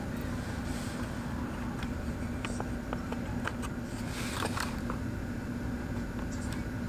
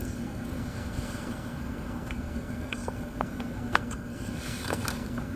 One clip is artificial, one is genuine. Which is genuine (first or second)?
first